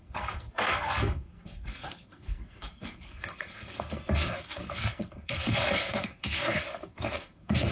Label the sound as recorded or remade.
remade